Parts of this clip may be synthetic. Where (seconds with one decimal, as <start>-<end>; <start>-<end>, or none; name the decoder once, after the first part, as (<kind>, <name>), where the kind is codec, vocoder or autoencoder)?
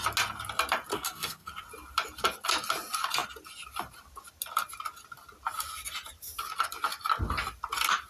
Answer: 0.9-1.5 (codec, SNAC)